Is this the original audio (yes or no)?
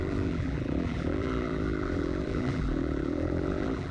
no